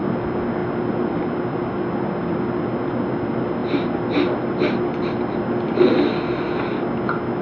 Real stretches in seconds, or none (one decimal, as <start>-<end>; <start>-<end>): 0.0-7.4